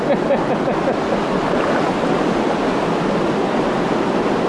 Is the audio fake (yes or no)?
no